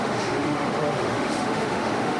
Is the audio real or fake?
fake